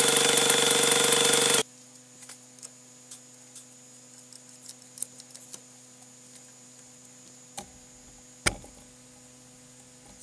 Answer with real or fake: real